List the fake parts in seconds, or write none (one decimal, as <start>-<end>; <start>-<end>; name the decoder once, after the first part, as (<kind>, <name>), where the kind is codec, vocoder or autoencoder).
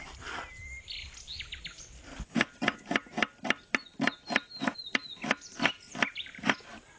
none